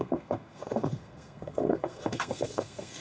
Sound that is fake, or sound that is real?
fake